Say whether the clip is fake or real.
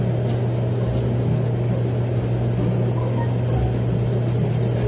real